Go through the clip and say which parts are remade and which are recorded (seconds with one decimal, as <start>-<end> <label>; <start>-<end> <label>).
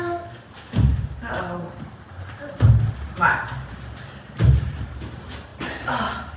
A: 0.0-0.9 remade; 0.9-3.4 recorded; 3.4-5.5 remade; 5.5-6.4 recorded